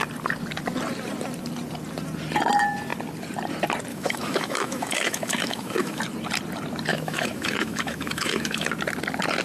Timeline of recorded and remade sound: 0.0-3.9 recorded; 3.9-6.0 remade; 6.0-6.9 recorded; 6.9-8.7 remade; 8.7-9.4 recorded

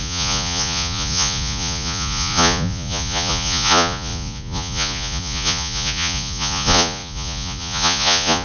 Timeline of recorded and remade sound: 0.0-8.4 remade

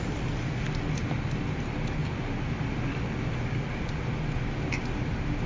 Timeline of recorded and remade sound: 0.0-5.5 recorded

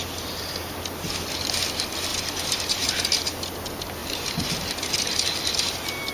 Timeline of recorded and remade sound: 0.0-2.1 recorded; 2.1-2.9 remade; 2.9-4.0 recorded; 4.0-4.5 remade; 4.5-6.1 recorded

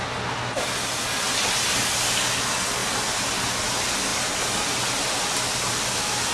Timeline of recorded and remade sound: 0.0-6.3 recorded